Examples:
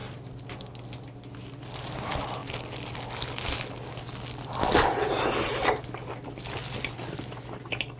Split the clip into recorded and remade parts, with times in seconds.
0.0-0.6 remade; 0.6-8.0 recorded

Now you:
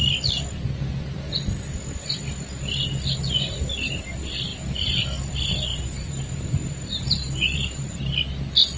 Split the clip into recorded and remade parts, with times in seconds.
0.0-5.7 recorded; 5.7-8.0 remade; 8.0-8.8 recorded

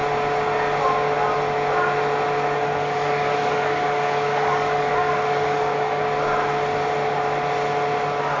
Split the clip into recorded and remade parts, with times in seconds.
0.0-2.6 recorded; 2.6-6.0 remade; 6.0-8.4 recorded